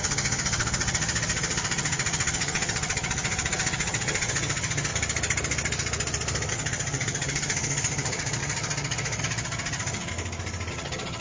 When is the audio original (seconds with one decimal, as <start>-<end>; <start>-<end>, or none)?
4.9-6.5; 10.1-10.7

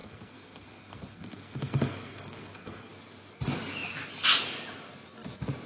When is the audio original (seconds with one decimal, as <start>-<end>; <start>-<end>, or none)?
2.9-5.7

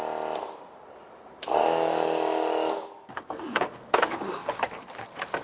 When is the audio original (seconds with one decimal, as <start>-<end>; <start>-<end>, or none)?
0.0-1.6; 4.8-5.4

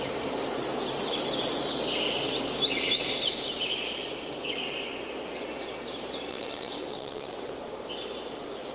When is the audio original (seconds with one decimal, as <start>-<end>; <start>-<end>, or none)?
0.0-6.3; 7.5-8.7

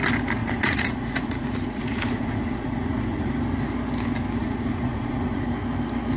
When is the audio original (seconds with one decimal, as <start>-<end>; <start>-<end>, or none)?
0.0-0.4; 3.4-4.4; 5.4-6.2